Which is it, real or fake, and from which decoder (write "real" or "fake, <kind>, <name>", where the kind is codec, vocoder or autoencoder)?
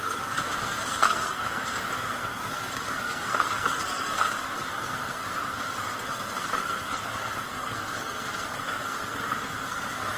fake, codec, SNAC